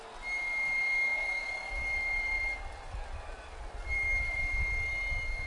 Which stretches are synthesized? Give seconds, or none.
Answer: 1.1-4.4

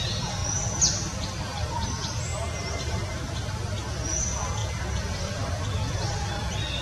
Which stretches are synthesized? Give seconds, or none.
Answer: none

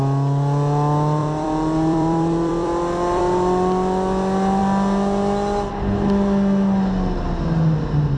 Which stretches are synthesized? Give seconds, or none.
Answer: 1.2-3.2

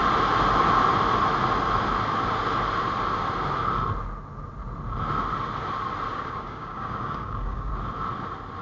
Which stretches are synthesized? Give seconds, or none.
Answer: 6.1-7.7

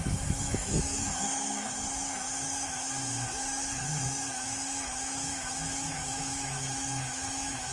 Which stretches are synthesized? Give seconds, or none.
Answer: 0.0-7.7

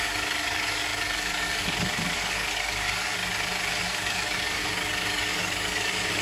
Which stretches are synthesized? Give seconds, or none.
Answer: 0.0-3.2; 3.7-6.2

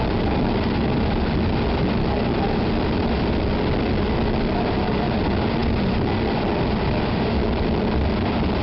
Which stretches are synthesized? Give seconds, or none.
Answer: none